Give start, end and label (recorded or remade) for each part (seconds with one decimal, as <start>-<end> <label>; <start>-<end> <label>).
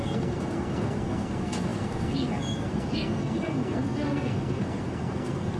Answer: 0.0-5.6 remade